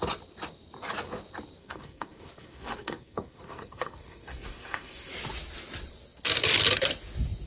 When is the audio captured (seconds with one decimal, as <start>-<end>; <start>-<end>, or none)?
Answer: 0.0-1.6; 5.1-7.5